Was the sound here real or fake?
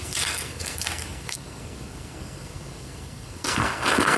fake